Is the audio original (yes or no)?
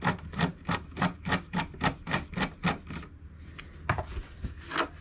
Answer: yes